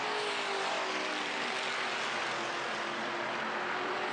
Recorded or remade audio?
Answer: recorded